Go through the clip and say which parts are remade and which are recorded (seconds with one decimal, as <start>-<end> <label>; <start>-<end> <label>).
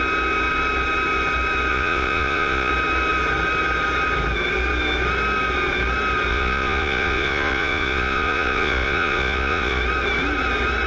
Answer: 0.0-1.7 recorded; 1.7-2.7 remade; 2.7-6.3 recorded; 6.3-9.8 remade; 9.8-10.9 recorded